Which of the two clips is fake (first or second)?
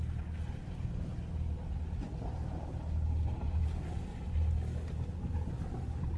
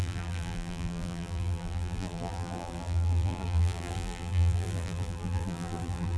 second